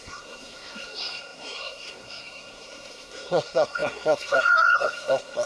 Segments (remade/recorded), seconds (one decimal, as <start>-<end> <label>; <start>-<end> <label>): 0.0-5.5 remade